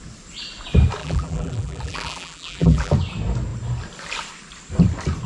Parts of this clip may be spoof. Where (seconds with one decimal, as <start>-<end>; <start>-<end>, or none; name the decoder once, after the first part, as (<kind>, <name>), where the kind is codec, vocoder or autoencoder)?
1.0-2.9 (vocoder, BigVGAN v2)